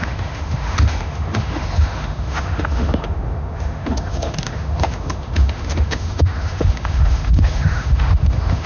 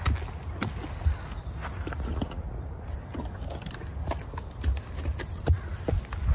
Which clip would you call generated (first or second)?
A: first